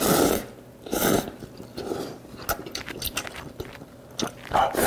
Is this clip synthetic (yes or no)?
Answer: no